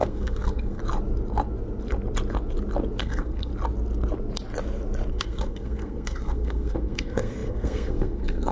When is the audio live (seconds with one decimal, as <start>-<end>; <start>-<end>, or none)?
0.8-3.0; 3.5-5.1